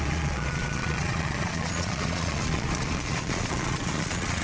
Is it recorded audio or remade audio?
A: remade